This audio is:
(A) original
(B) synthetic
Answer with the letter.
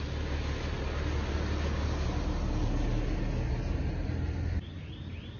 A